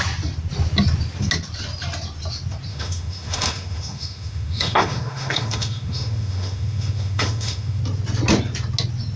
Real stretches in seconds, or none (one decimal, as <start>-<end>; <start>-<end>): 0.0-2.7; 7.8-9.2